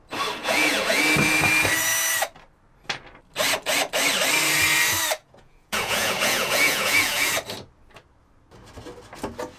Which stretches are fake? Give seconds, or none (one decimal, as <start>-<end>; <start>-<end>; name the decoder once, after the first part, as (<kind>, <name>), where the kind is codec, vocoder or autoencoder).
0.4-1.0 (vocoder, Vocos); 5.2-7.3